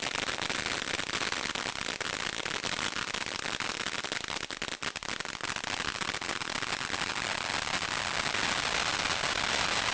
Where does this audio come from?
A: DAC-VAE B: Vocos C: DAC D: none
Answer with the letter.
D